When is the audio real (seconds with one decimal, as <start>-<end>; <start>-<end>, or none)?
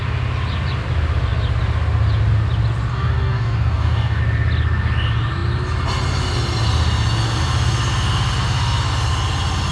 0.0-2.9; 4.2-9.7